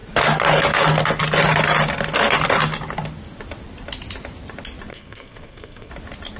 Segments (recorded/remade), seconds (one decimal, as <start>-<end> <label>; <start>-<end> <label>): 0.0-4.9 recorded; 4.9-5.9 remade; 5.9-6.4 recorded